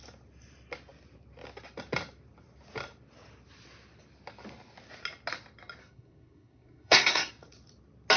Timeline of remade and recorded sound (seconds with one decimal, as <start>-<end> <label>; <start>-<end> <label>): 0.0-5.8 recorded; 5.8-7.3 remade; 7.3-8.2 recorded